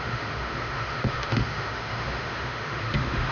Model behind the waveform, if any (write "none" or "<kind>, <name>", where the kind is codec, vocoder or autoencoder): autoencoder, DAC-VAE